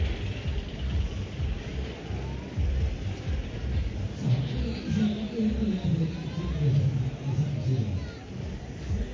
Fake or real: real